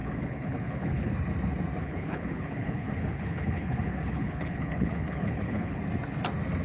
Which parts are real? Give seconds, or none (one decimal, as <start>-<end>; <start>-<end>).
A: 1.1-1.8; 5.8-6.6